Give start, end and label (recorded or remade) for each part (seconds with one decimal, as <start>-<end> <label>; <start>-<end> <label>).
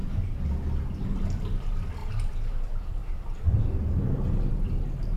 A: 0.0-2.0 recorded; 2.0-2.6 remade; 2.6-5.2 recorded